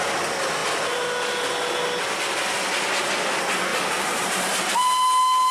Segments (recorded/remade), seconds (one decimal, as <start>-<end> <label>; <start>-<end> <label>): 0.0-3.7 recorded; 3.7-4.6 remade; 4.6-5.5 recorded